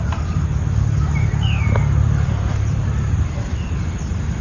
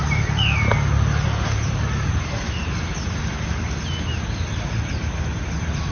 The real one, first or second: second